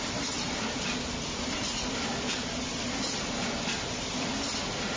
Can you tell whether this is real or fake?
real